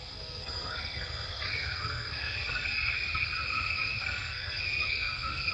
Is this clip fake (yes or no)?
yes